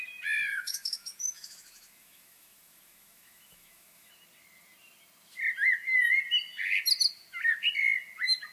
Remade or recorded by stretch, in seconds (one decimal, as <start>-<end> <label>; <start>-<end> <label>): 0.0-0.5 recorded; 0.5-4.1 remade; 4.1-8.5 recorded